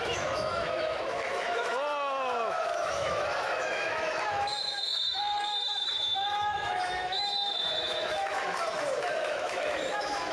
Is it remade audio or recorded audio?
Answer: remade